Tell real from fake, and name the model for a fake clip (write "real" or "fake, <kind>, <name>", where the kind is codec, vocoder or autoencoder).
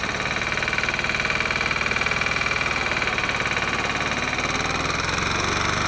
real